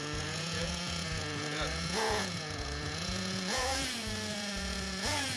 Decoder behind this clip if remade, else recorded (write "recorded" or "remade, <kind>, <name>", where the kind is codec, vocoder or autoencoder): remade, vocoder, Vocos